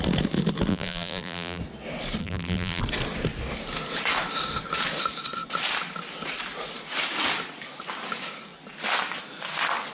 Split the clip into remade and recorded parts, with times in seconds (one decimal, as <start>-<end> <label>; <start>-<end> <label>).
0.0-0.7 recorded; 0.7-1.6 remade; 1.6-2.2 recorded; 2.2-2.8 remade; 2.8-9.9 recorded